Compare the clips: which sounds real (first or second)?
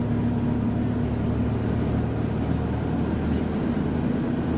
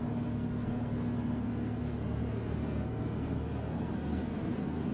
first